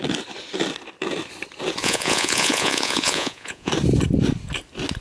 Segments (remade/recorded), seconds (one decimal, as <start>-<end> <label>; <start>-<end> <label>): 0.0-1.8 recorded; 1.8-3.7 remade; 3.7-5.0 recorded

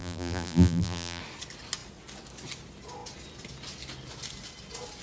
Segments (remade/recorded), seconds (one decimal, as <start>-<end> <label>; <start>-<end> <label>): 0.0-1.2 remade; 1.2-5.0 recorded

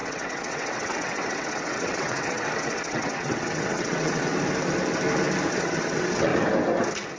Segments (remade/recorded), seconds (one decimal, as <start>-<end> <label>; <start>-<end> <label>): 0.0-4.3 remade; 4.3-5.5 recorded; 5.5-6.3 remade; 6.3-7.2 recorded

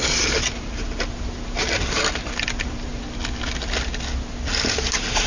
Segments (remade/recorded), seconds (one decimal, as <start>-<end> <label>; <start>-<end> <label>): 0.0-5.3 recorded

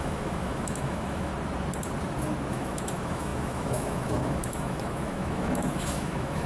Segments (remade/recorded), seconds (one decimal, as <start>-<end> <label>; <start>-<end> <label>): 0.0-1.3 remade; 1.3-2.5 recorded; 2.5-6.5 remade

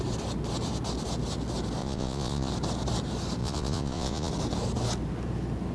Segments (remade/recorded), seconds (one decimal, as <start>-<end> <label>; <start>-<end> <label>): 0.0-1.8 recorded; 1.8-2.5 remade; 2.5-3.4 recorded; 3.4-4.3 remade; 4.3-5.7 recorded

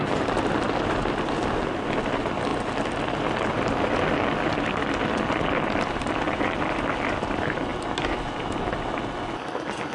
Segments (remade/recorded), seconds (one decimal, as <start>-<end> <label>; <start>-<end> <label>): 0.0-9.9 recorded